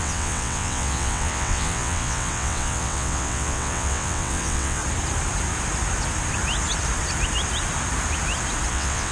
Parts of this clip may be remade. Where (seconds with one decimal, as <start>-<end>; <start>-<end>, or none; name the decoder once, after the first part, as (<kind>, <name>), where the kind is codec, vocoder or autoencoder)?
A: 0.0-4.8 (vocoder, WaveNeXt); 8.7-9.1